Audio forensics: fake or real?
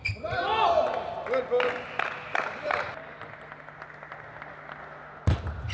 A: real